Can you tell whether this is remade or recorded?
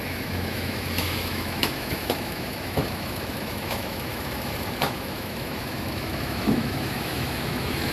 remade